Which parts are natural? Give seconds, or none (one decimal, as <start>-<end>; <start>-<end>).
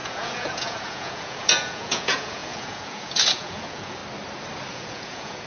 4.0-4.7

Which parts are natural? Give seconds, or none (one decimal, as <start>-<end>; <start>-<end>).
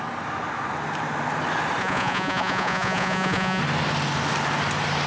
0.0-1.8; 3.6-5.1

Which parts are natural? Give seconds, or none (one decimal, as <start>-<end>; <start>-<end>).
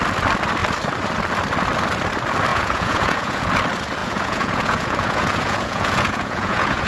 0.0-2.5; 3.5-4.0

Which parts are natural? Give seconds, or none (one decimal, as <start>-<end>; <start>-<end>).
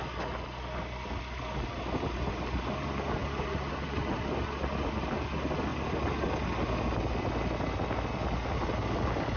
0.0-9.4